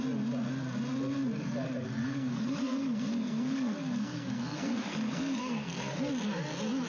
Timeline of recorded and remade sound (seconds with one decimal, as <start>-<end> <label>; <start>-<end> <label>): 0.0-2.0 recorded; 2.0-6.1 remade; 6.1-6.9 recorded

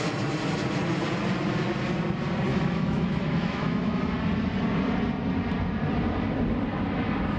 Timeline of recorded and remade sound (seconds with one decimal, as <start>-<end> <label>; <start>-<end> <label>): 0.0-2.5 recorded; 2.5-4.0 remade; 4.0-7.4 recorded

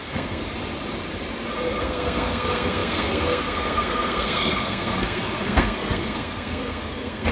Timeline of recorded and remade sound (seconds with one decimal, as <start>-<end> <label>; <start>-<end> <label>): 0.0-0.4 remade; 0.4-1.8 recorded; 1.8-7.3 remade

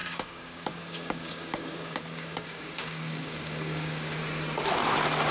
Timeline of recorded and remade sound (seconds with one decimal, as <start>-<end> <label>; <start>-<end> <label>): 0.0-4.2 remade; 4.2-5.3 recorded

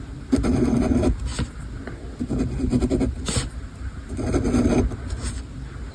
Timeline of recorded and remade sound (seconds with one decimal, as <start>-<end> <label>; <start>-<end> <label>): 0.0-5.9 recorded